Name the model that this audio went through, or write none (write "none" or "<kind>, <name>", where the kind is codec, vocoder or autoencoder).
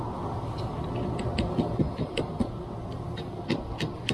none